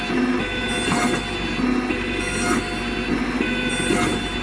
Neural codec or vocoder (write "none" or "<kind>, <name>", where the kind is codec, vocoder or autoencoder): none